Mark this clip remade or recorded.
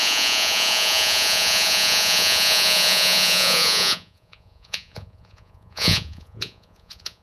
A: remade